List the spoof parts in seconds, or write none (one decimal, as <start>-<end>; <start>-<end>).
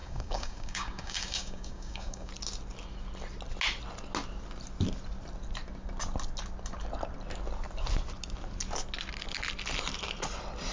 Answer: 0.0-2.3